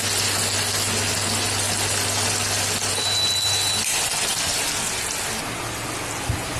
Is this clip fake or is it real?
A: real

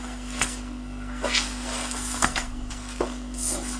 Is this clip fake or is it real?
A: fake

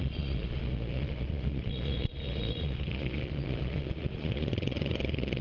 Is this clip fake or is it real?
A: fake